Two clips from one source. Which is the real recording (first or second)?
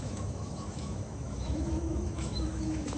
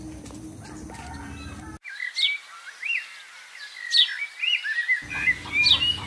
second